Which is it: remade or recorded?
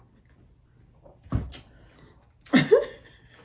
recorded